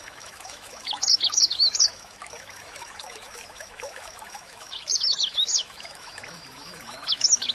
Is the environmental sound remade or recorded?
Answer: remade